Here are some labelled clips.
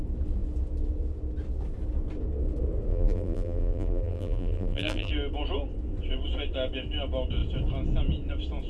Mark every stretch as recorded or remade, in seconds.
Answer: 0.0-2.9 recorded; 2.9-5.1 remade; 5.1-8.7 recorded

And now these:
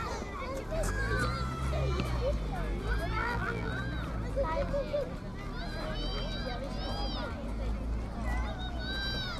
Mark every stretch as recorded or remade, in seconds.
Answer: 0.0-3.2 recorded; 3.2-3.7 remade; 3.7-9.4 recorded

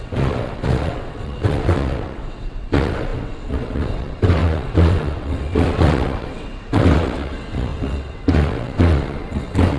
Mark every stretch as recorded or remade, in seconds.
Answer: 0.0-9.8 remade

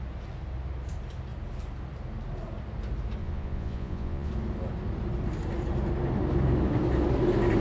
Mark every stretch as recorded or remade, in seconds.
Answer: 0.0-3.2 recorded; 3.2-4.3 remade; 4.3-7.6 recorded

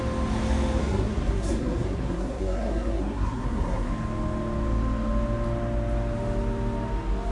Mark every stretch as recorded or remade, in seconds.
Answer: 0.0-0.8 recorded; 0.8-3.9 remade; 3.9-7.3 recorded

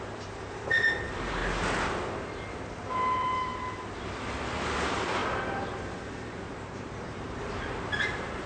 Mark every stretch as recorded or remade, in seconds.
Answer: 0.0-1.4 remade; 1.4-2.9 recorded; 2.9-3.5 remade; 3.5-4.4 recorded; 4.4-5.2 remade; 5.2-5.8 recorded; 5.8-8.5 remade